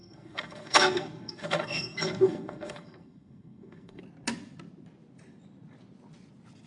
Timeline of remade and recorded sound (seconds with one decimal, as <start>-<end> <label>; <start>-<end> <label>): 0.0-4.0 remade; 4.0-6.7 recorded